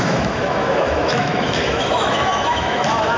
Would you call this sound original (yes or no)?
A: no